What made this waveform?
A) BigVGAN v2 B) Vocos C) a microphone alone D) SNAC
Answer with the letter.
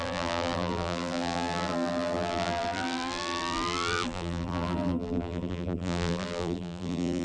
A